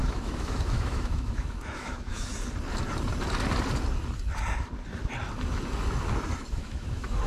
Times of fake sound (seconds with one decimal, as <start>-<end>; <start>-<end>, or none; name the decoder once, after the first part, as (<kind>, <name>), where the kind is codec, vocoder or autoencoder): 0.0-2.3 (autoencoder, DAC-VAE); 6.5-7.3